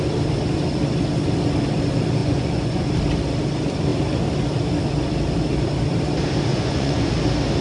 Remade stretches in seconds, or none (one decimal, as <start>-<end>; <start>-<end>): 2.2-2.9; 6.5-7.1